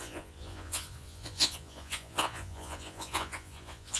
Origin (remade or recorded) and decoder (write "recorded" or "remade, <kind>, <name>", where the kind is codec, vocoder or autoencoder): remade, vocoder, Vocos